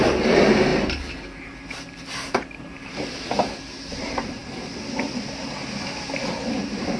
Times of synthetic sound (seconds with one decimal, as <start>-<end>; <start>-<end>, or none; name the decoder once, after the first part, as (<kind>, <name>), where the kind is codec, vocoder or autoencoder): 0.0-0.7 (vocoder, BigVGAN v2); 3.9-4.4; 6.6-7.0